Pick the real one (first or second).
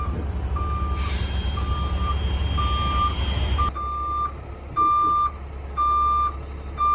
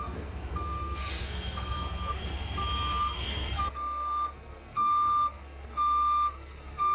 first